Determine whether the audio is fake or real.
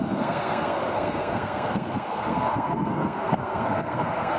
fake